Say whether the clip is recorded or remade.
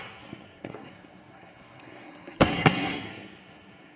remade